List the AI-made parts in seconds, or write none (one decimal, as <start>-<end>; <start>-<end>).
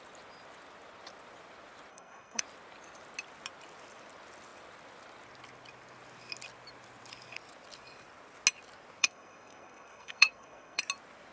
1.9-2.4; 9.0-10.8